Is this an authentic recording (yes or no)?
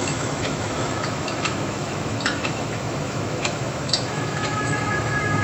no